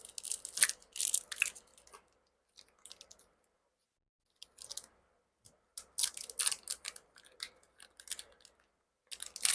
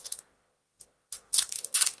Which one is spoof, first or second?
second